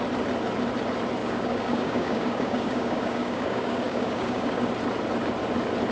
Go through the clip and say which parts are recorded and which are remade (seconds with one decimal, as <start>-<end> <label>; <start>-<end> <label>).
0.0-1.2 recorded; 1.2-4.7 remade; 4.7-5.9 recorded